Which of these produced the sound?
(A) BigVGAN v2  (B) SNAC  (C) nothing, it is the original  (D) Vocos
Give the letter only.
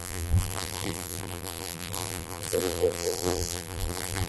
A